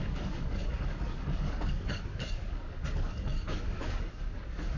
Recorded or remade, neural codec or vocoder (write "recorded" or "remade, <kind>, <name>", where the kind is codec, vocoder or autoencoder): remade, codec, DAC